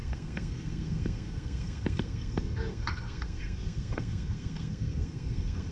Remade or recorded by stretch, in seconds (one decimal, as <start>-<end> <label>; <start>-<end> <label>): 0.0-5.7 remade